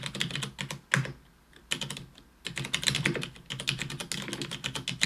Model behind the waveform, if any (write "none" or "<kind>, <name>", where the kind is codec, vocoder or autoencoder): none